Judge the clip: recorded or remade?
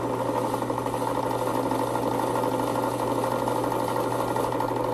recorded